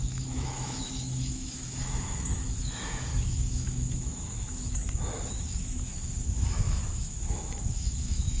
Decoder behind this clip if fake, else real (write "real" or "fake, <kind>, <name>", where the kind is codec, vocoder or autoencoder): fake, autoencoder, DAC-VAE